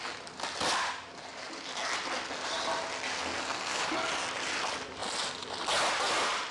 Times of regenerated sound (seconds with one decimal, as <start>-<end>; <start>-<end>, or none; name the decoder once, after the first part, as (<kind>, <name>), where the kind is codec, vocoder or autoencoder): 3.2-3.8 (codec, SNAC)